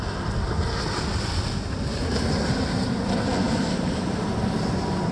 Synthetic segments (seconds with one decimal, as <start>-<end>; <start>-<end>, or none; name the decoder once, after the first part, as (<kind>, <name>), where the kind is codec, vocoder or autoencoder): 2.0-2.7 (vocoder, BigVGAN v2); 3.3-5.1